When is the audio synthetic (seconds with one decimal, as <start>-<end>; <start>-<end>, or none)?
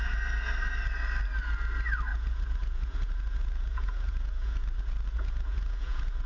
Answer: 2.1-6.3